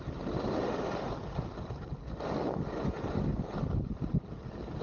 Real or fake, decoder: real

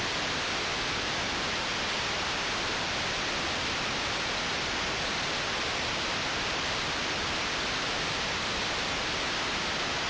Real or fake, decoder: real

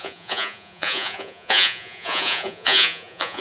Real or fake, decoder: fake, vocoder, Vocos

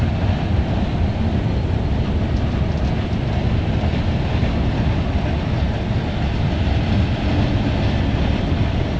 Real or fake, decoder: real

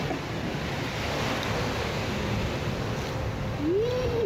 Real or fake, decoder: real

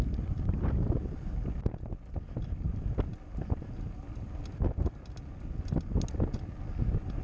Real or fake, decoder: real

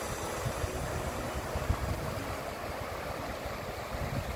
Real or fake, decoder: real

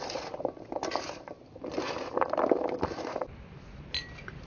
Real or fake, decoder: real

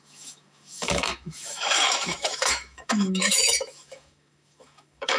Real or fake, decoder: fake, autoencoder, DAC-VAE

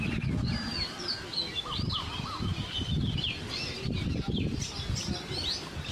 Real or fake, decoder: real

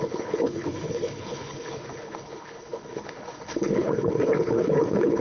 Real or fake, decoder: fake, codec, HILCodec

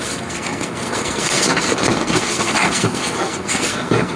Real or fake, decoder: fake, codec, SNAC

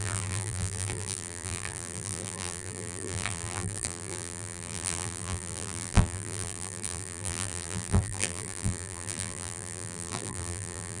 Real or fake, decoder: fake, vocoder, BigVGAN v2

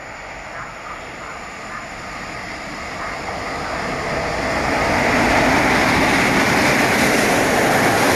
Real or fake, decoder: real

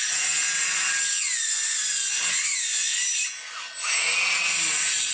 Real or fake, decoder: real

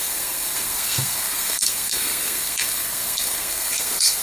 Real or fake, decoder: fake, codec, SNAC